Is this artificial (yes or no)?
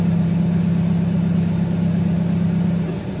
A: no